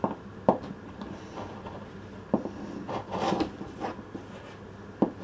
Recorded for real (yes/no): yes